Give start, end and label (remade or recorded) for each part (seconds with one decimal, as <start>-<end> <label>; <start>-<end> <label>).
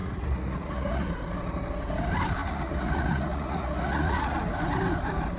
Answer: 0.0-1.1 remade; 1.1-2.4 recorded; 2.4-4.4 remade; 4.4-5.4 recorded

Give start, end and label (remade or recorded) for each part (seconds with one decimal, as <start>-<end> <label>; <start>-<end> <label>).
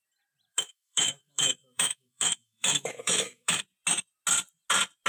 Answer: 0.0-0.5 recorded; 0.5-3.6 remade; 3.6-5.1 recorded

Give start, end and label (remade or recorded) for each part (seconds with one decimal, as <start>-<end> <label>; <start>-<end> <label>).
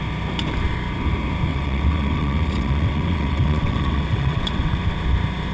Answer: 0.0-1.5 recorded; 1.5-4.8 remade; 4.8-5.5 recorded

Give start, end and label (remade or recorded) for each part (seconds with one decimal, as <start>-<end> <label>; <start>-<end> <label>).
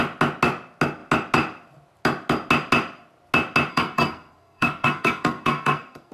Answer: 0.0-3.7 recorded; 3.7-6.1 remade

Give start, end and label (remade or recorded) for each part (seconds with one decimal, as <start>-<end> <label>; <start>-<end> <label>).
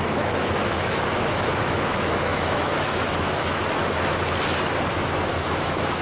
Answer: 0.0-3.6 remade; 3.6-5.3 recorded; 5.3-6.0 remade